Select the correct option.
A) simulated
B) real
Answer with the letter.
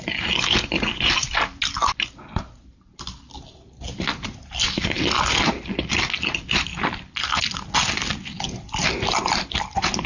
B